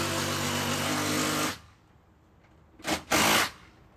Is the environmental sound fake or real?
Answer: real